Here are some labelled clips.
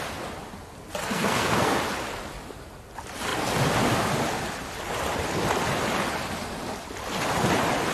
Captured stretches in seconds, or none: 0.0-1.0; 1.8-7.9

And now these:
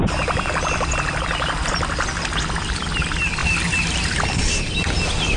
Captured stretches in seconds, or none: 0.0-5.4

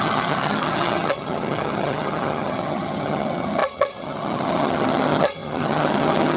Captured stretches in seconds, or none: none